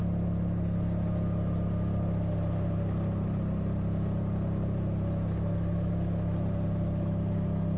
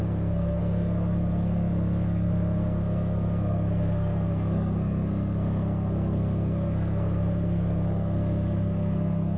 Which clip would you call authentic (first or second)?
first